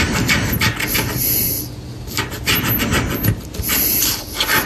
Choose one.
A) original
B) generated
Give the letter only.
A